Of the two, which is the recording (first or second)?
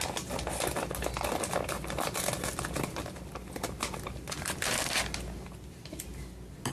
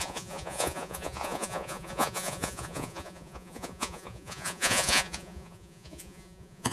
first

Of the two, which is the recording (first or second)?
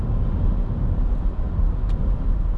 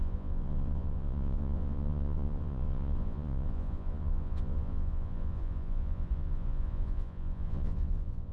first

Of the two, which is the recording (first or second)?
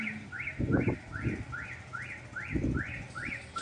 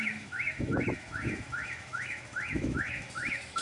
first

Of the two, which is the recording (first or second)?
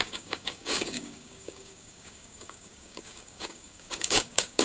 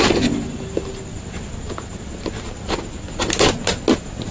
second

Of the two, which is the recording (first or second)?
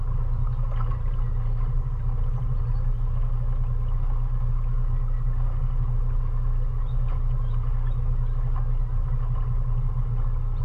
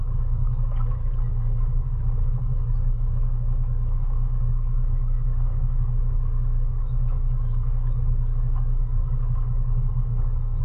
first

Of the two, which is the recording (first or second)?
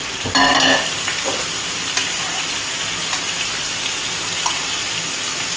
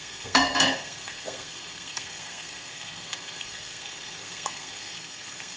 first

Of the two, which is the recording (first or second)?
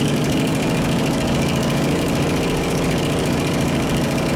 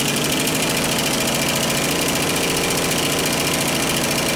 second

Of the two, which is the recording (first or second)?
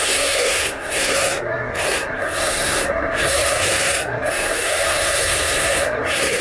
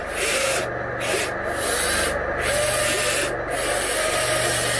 second